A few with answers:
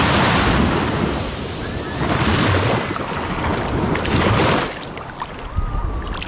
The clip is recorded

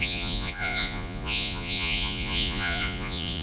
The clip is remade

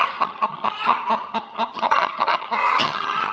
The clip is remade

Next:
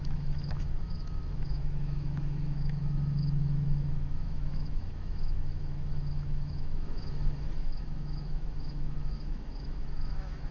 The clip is remade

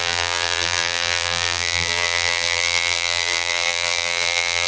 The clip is remade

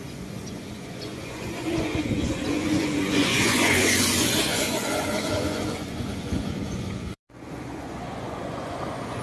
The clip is remade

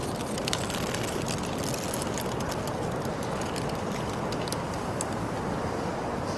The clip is recorded